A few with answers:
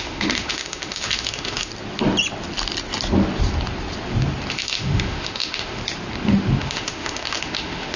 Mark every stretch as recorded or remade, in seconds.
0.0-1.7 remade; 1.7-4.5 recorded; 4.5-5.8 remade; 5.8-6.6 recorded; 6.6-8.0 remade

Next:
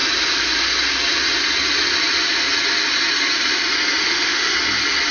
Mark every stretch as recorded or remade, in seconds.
0.0-4.0 recorded; 4.0-4.5 remade; 4.5-5.1 recorded

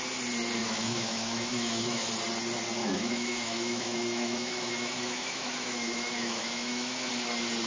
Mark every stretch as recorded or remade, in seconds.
0.0-0.6 recorded; 0.6-2.1 remade; 2.1-2.8 recorded; 2.8-7.1 remade; 7.1-7.7 recorded

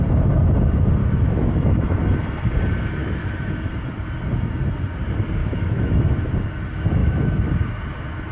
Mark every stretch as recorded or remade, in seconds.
0.0-1.0 recorded; 1.0-2.1 remade; 2.1-3.0 recorded; 3.0-3.7 remade; 3.7-5.4 recorded; 5.4-6.3 remade; 6.3-7.0 recorded; 7.0-7.5 remade; 7.5-8.3 recorded